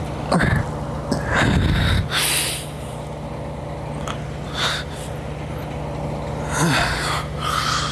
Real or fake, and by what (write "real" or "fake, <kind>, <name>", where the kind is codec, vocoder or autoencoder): real